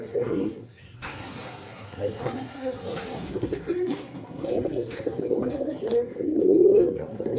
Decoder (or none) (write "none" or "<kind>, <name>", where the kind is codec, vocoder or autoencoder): codec, SNAC